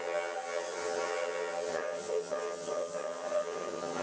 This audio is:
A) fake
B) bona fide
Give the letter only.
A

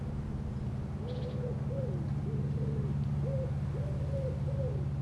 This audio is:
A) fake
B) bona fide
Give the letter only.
B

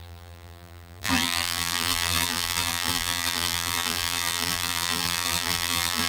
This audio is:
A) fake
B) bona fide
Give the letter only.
A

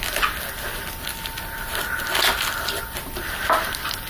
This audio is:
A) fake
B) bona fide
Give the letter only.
B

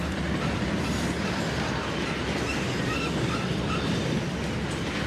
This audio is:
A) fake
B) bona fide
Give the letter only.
B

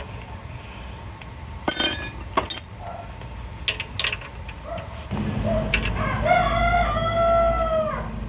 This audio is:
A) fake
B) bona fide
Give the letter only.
B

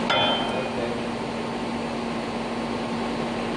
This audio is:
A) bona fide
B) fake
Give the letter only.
A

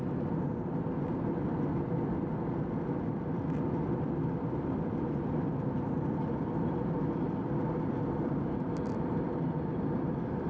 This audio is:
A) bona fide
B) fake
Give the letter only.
A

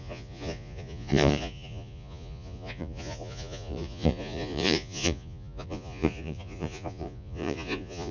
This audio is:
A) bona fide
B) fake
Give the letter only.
B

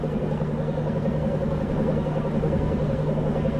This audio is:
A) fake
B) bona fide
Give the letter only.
A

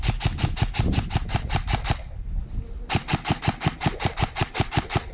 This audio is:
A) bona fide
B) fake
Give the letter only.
A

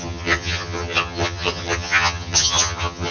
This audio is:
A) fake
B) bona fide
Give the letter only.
A